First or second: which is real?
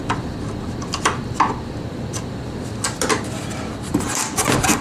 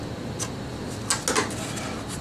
second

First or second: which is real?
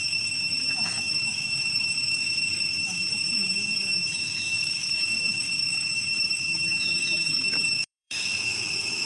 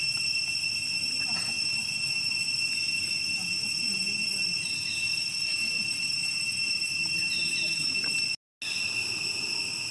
second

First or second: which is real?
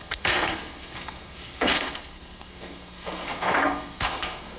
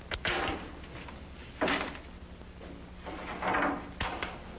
second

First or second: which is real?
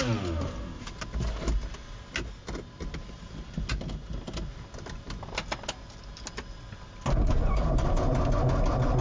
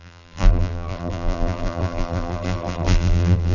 first